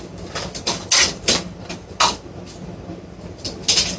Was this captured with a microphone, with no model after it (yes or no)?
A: yes